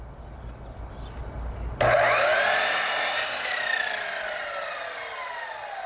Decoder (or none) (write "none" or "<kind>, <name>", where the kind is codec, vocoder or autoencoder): none